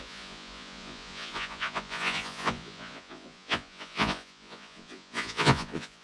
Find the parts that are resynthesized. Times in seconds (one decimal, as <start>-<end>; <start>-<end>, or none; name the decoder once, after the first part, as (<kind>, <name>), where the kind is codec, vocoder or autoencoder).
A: 0.0-6.0 (vocoder, Vocos)